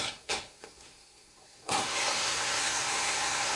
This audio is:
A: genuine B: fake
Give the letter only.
B